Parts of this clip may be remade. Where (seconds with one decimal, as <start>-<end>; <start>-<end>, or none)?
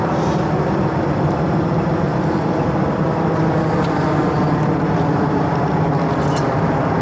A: none